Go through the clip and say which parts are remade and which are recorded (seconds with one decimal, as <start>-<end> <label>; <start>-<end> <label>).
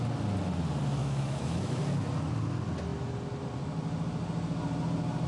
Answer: 0.0-1.0 recorded; 1.0-1.8 remade; 1.8-5.3 recorded